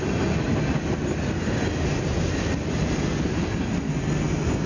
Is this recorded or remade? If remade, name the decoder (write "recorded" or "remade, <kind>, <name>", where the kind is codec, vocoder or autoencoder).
recorded